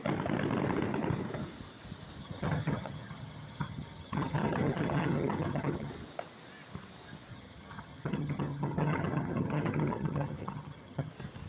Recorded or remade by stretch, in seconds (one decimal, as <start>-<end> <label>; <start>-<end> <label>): 0.0-2.2 recorded; 2.2-5.9 remade; 5.9-7.3 recorded; 7.3-11.1 remade; 11.1-11.5 recorded